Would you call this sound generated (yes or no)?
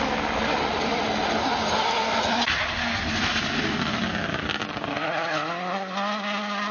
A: no